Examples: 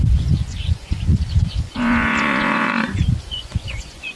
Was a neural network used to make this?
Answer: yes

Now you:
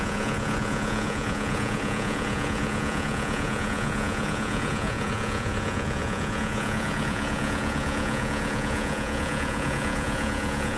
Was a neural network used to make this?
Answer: yes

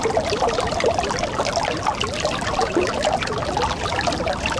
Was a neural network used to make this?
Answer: no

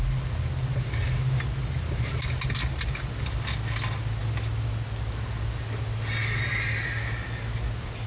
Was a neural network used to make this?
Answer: no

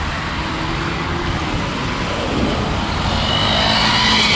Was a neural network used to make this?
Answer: no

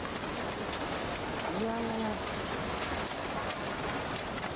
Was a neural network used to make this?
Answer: no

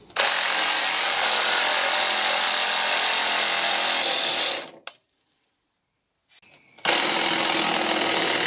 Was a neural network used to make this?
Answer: no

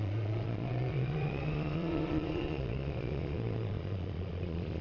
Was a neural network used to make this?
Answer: yes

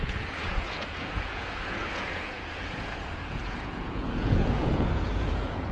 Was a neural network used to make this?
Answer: yes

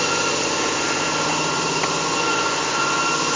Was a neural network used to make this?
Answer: yes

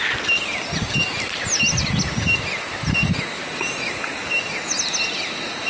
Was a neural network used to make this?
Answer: no